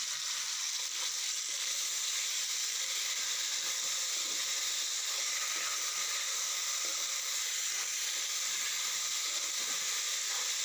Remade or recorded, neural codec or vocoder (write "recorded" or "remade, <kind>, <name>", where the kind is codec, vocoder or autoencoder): recorded